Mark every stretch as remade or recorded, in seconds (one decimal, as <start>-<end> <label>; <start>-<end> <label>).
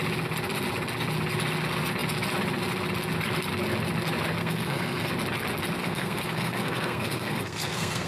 0.0-4.4 recorded; 4.4-5.1 remade; 5.1-5.8 recorded; 5.8-8.1 remade